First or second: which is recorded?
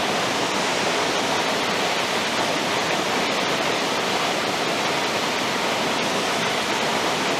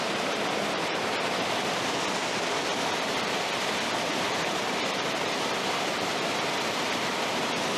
first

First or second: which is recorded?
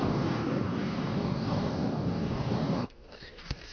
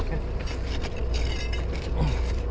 second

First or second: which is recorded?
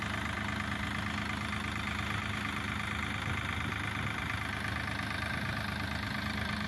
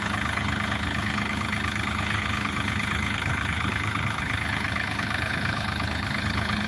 first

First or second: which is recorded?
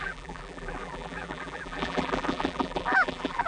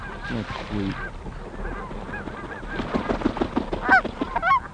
second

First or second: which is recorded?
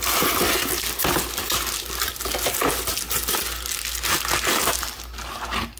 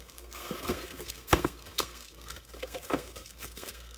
first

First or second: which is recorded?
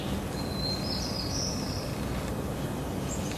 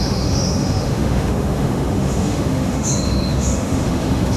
first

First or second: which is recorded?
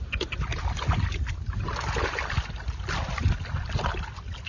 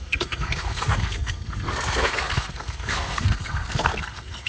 first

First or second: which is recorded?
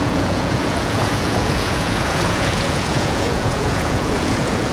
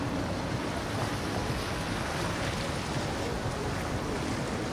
second